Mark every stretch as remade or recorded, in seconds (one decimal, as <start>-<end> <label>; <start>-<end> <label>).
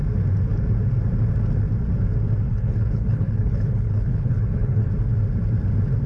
0.0-2.5 recorded; 2.5-4.9 remade; 4.9-6.1 recorded